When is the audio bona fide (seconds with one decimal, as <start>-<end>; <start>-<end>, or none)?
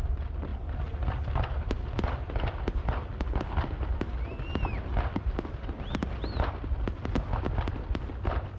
0.0-8.6